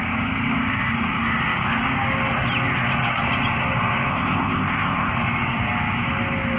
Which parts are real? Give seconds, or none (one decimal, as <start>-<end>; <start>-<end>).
0.0-4.1; 5.1-6.6